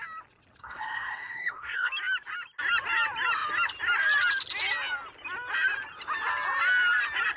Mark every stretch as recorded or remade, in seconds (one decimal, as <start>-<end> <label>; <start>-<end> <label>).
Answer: 0.0-0.6 recorded; 0.6-1.9 remade; 1.9-7.4 recorded